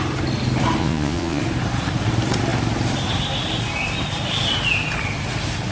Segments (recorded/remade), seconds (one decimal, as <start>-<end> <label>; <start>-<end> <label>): 0.0-0.8 recorded; 0.8-1.4 remade; 1.4-5.7 recorded